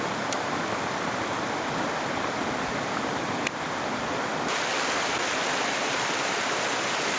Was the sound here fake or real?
real